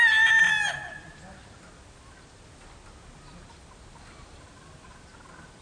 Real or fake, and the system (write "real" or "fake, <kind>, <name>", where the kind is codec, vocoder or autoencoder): real